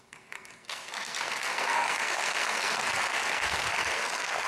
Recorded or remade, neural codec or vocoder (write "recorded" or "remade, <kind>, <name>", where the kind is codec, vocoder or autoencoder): remade, codec, SNAC